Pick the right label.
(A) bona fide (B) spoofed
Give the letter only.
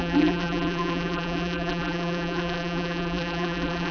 B